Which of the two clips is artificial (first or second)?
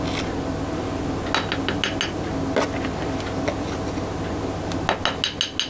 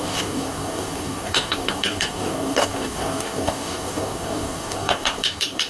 second